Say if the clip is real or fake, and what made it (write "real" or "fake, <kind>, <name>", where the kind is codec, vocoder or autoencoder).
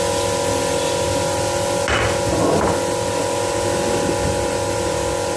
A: real